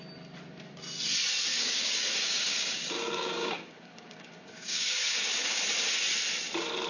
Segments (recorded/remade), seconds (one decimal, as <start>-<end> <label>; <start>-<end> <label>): 0.0-1.5 recorded; 1.5-5.6 remade; 5.6-6.9 recorded